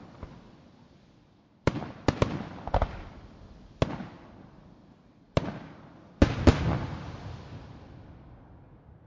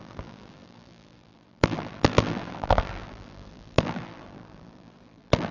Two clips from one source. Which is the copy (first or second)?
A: second